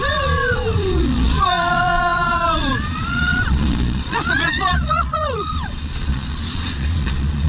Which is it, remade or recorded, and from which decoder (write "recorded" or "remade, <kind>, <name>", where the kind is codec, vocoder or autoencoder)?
remade, vocoder, Vocos